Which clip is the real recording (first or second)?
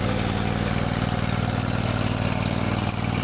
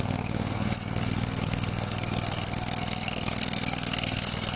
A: first